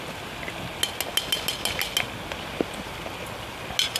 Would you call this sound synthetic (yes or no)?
no